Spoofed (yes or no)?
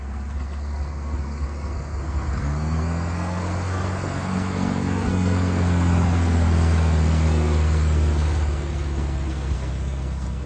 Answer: yes